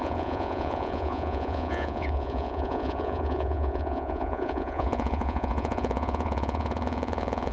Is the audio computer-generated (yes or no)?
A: yes